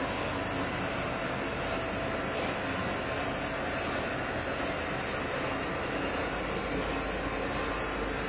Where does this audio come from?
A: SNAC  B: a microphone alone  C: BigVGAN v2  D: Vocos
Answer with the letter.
B